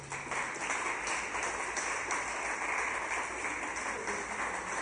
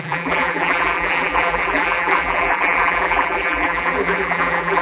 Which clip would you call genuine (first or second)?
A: first